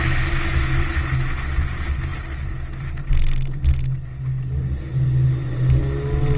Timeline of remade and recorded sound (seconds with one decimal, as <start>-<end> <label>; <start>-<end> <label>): 0.0-2.1 recorded; 2.1-3.0 remade; 3.0-6.4 recorded